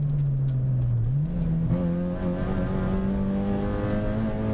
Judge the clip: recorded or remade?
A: recorded